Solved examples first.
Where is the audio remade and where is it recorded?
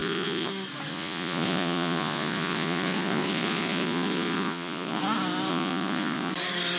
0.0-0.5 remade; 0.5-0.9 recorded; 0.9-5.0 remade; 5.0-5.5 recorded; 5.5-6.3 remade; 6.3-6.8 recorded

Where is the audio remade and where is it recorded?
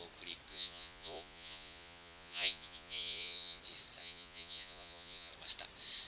0.0-0.5 recorded; 0.5-3.6 remade; 3.6-4.0 recorded; 4.0-5.3 remade; 5.3-6.1 recorded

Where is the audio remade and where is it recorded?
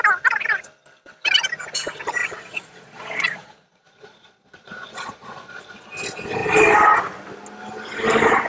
0.0-2.2 recorded; 2.2-5.9 remade; 5.9-8.5 recorded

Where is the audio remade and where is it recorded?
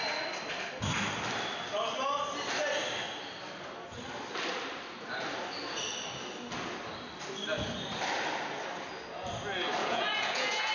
0.0-9.8 recorded; 9.8-10.7 remade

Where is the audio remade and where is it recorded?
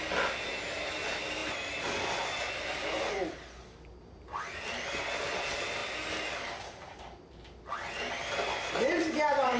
0.0-9.6 recorded